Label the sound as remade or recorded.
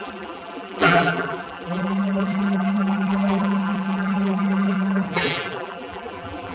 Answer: remade